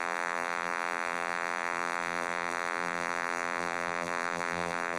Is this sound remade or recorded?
remade